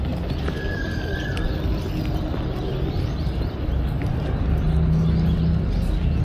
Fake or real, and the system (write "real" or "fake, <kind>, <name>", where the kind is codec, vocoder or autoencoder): real